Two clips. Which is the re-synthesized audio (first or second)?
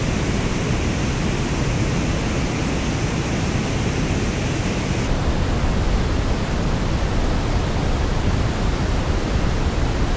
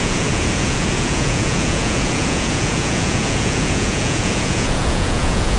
second